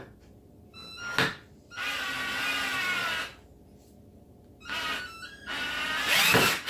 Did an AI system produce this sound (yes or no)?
no